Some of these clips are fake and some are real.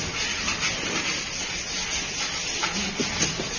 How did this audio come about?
real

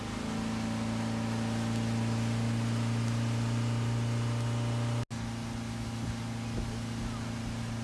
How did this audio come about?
real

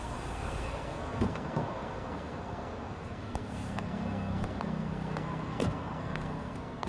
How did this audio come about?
fake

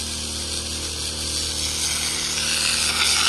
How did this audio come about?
real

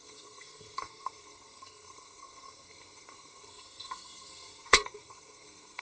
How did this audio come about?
fake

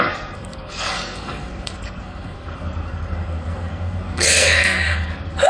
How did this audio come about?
fake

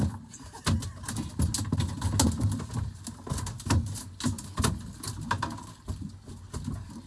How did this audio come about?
real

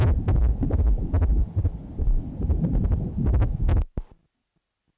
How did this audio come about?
real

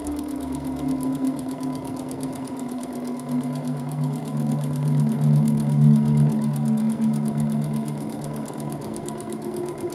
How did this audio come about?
fake